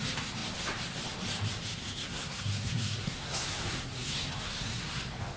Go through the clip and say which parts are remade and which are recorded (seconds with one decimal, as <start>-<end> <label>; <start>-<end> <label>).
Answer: 0.0-1.8 recorded; 1.8-5.0 remade; 5.0-5.4 recorded